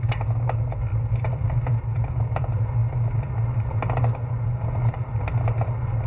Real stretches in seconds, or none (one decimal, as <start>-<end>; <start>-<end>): 0.0-6.1